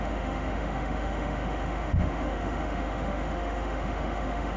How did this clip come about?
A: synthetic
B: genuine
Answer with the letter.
A